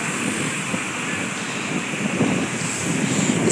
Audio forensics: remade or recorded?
recorded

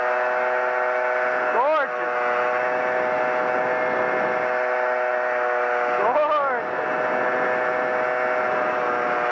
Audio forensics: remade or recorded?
recorded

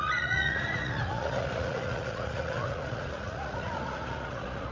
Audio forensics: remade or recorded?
remade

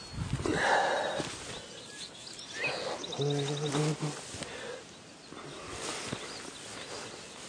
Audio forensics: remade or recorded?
recorded